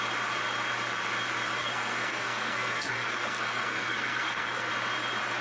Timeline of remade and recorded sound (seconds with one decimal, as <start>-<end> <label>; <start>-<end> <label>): 0.0-1.6 recorded; 1.6-4.7 remade; 4.7-5.4 recorded